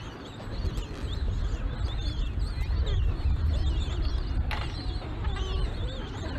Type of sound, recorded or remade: recorded